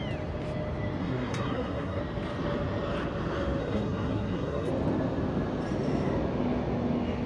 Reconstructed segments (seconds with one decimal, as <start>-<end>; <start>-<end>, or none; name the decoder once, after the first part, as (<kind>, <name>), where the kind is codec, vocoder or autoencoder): 1.0-2.0 (codec, SNAC); 3.6-4.7